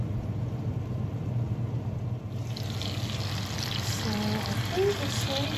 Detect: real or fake real